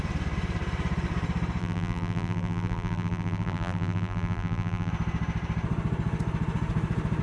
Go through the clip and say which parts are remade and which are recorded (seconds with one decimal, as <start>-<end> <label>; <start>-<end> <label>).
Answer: 0.0-1.6 recorded; 1.6-4.9 remade; 4.9-7.2 recorded